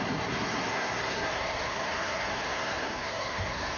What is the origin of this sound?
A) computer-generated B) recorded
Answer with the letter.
A